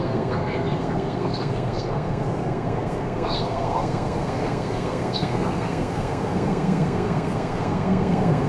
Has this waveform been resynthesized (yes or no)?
yes